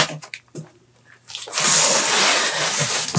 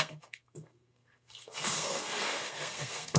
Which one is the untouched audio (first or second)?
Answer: first